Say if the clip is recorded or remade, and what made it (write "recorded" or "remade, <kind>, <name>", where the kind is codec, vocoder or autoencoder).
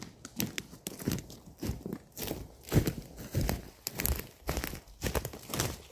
recorded